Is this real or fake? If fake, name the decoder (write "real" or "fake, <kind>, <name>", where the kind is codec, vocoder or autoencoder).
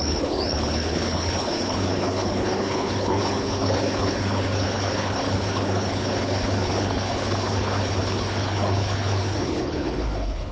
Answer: fake, codec, HILCodec